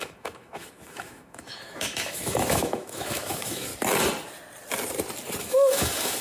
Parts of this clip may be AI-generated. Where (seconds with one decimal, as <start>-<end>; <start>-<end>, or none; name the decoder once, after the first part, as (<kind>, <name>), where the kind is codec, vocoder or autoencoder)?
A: 0.0-3.7 (autoencoder, DAC-VAE); 5.4-6.2